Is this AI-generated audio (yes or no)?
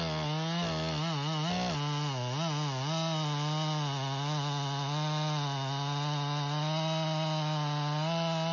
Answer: no